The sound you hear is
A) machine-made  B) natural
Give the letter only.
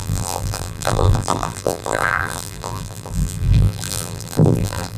A